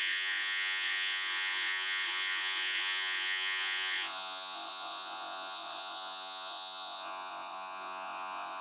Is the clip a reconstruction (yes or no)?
yes